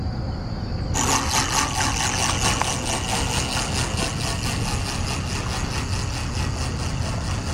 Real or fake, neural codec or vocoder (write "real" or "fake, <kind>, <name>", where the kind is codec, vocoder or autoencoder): real